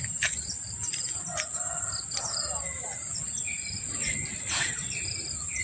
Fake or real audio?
fake